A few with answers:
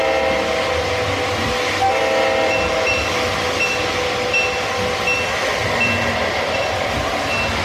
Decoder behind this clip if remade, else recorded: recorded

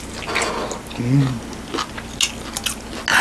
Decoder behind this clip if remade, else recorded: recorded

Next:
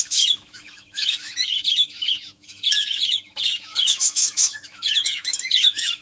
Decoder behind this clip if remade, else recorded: remade, autoencoder, DAC-VAE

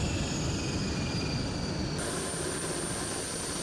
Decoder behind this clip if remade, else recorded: recorded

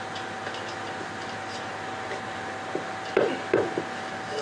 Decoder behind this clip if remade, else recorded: recorded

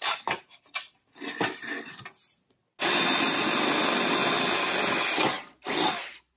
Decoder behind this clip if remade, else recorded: recorded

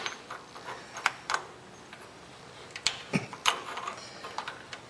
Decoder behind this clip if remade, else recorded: recorded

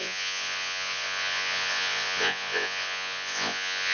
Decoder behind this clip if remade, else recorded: remade, vocoder, Vocos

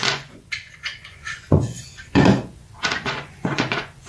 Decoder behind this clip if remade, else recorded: remade, vocoder, Vocos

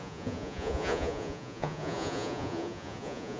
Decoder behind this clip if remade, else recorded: remade, vocoder, Vocos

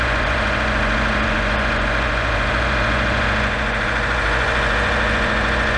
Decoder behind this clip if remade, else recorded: remade, vocoder, Vocos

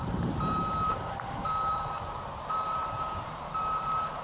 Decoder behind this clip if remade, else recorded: remade, vocoder, BigVGAN v2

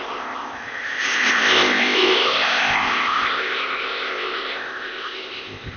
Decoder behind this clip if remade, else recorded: remade, codec, ZipCodec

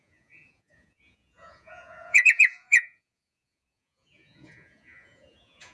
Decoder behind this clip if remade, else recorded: remade, vocoder, Vocos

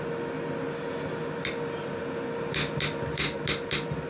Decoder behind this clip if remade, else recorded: recorded